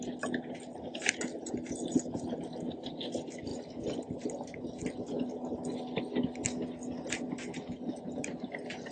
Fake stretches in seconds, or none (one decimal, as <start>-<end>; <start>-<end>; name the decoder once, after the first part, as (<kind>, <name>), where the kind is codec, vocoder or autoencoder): none